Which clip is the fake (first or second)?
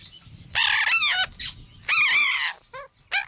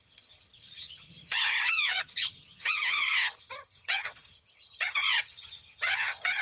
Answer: second